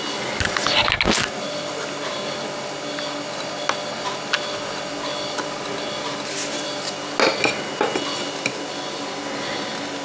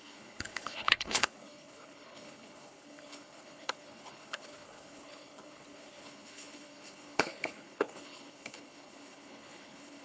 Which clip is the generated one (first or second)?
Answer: second